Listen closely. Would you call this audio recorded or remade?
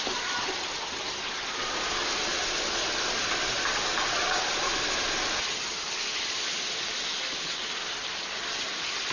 recorded